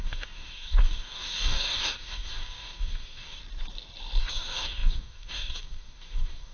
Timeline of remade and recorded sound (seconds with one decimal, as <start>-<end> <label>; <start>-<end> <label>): 0.0-3.4 remade; 3.4-4.2 recorded; 4.2-6.5 remade